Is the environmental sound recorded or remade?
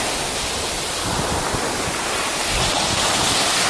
recorded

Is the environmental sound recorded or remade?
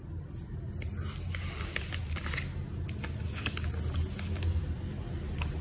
recorded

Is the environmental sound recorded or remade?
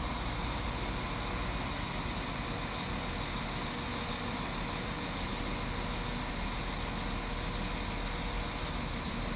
recorded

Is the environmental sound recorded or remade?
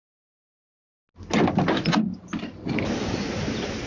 recorded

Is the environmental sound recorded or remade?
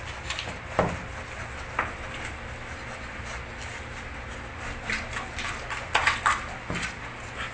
recorded